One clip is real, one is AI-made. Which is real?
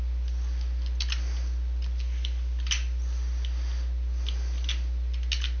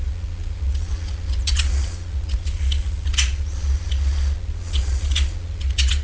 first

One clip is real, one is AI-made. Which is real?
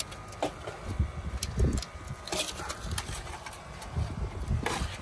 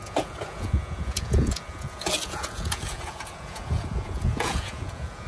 first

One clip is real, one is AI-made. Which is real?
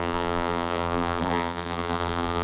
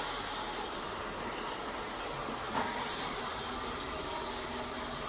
second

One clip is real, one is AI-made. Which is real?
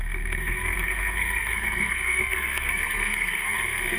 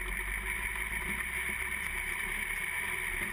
second